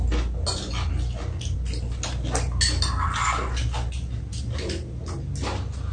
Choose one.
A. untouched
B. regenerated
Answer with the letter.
A